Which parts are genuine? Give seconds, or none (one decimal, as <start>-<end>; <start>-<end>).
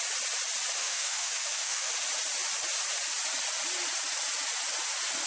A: 0.0-0.8; 1.9-5.3